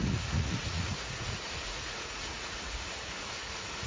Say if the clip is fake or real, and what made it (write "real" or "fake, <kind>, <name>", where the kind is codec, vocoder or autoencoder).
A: fake, vocoder, Vocos